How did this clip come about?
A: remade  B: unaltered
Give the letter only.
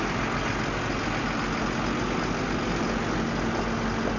B